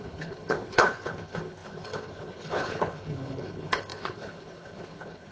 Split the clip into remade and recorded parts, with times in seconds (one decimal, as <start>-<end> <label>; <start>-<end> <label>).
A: 0.0-5.3 remade